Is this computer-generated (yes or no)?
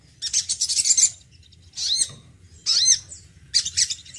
no